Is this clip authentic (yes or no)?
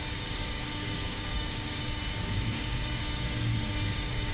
no